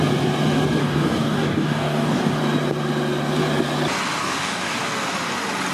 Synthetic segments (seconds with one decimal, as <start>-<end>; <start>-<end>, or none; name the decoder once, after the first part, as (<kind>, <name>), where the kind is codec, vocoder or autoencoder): 0.8-2.4 (codec, DAC); 4.2-4.8